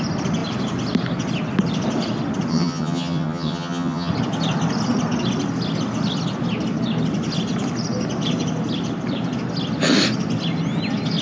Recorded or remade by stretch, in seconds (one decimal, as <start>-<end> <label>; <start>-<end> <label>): 0.0-2.5 recorded; 2.5-4.1 remade; 4.1-11.2 recorded